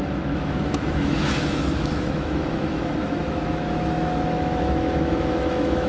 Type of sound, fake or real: fake